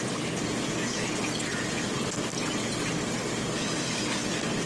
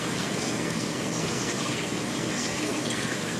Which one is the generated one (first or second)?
second